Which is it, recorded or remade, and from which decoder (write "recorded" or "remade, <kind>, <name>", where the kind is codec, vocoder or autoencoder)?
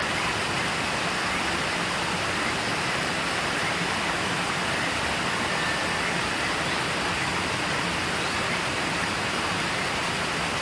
recorded